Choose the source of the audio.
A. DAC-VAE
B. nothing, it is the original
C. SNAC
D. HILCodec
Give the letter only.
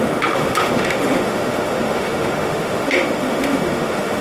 A